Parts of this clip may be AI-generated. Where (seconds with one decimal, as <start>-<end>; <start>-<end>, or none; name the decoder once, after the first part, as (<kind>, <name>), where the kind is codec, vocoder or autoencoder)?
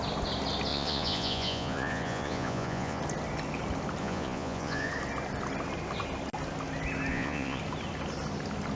0.7-3.0 (vocoder, Vocos); 4.0-4.9; 7.1-7.6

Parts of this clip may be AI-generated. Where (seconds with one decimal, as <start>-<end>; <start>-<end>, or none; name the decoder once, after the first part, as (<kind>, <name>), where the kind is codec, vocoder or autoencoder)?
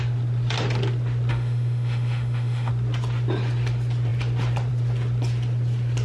1.3-2.7 (autoencoder, DAC-VAE)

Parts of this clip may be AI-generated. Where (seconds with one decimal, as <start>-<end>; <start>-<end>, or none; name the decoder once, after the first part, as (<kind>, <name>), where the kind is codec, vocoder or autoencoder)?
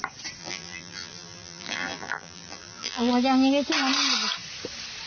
0.4-3.1 (vocoder, BigVGAN v2)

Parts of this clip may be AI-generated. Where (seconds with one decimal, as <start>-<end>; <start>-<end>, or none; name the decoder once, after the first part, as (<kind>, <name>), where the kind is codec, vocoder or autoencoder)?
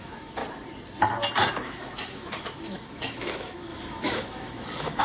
0.0-0.4 (autoencoder, DAC-VAE); 1.5-5.0